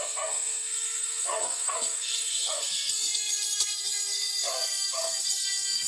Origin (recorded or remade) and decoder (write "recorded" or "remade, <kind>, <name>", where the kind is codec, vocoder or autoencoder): remade, codec, SNAC